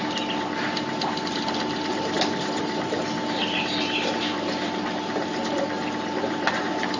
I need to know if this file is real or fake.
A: real